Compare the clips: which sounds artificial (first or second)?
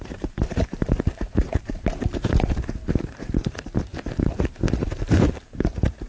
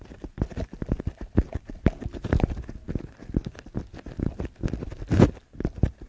first